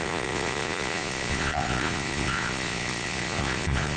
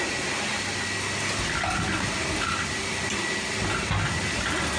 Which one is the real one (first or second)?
second